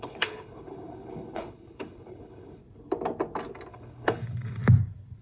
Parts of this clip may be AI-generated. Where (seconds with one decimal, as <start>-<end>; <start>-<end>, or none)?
0.0-2.6; 3.7-4.6